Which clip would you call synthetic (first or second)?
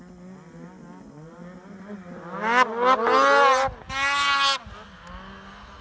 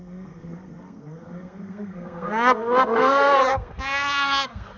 second